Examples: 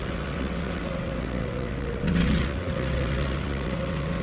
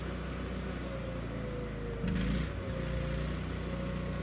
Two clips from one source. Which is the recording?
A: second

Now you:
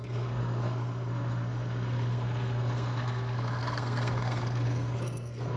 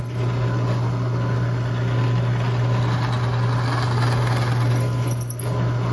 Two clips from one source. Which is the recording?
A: second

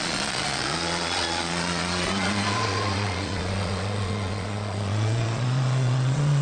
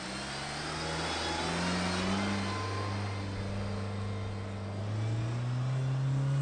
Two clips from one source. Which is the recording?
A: second